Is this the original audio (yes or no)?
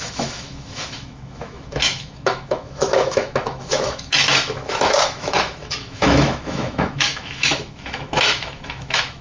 no